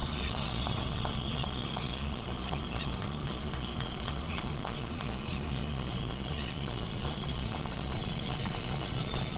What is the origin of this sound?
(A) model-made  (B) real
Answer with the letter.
A